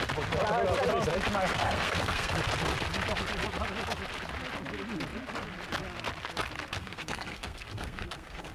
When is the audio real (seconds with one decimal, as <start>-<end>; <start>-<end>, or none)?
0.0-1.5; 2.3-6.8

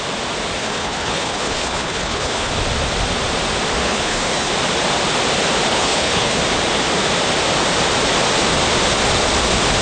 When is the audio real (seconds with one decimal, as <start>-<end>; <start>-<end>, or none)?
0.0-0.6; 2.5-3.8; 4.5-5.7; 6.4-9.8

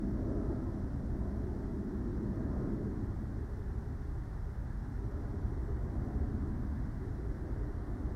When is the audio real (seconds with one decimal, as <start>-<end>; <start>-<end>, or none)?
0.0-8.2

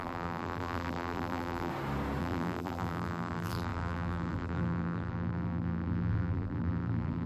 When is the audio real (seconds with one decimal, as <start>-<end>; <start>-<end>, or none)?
1.7-2.2

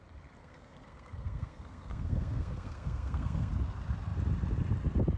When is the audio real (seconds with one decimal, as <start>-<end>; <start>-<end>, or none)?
0.0-0.4; 3.5-5.2

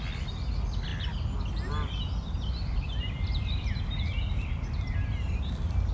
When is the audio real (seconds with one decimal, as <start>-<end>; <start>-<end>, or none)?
0.0-5.9

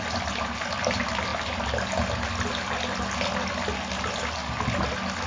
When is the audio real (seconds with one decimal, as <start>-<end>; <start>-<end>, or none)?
0.0-5.3

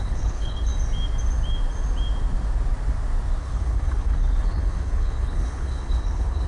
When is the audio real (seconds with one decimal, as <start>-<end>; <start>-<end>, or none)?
0.7-3.4